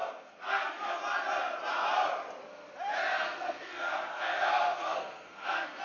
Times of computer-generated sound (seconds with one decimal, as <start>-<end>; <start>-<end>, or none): 0.0-1.0; 3.1-5.8